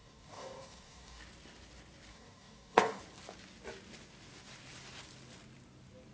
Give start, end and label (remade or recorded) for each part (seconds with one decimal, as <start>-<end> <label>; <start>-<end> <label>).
0.0-1.2 remade; 1.2-2.1 recorded; 2.1-3.0 remade; 3.0-6.1 recorded